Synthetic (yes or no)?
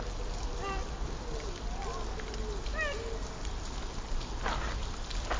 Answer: no